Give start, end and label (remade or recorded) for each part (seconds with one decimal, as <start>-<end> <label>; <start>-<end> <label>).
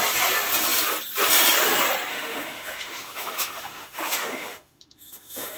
0.0-2.1 recorded; 2.1-5.6 remade